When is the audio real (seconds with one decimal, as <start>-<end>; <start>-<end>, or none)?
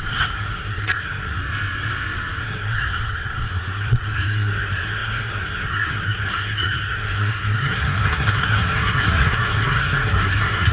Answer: 1.4-2.4